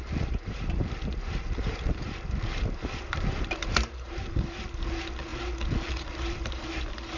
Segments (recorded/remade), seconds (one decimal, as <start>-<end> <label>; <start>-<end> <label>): 0.0-5.3 remade; 5.3-5.9 recorded; 5.9-7.2 remade